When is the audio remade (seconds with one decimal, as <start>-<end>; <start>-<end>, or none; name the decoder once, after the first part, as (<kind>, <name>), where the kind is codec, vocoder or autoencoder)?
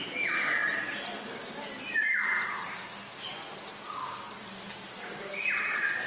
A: 2.8-6.1 (vocoder, BigVGAN v2)